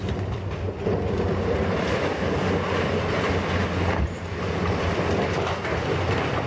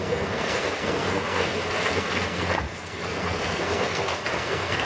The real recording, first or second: first